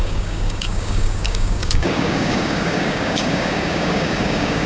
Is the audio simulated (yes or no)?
yes